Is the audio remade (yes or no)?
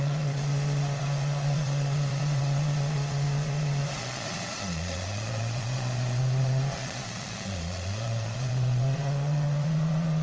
yes